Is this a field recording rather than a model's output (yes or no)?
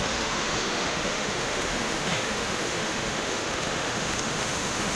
no